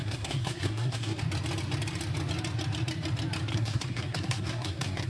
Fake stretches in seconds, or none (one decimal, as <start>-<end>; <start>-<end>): 0.0-1.2; 3.5-5.1